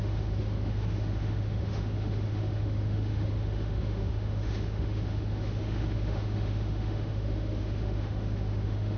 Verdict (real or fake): fake